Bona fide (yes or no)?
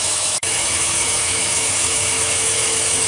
no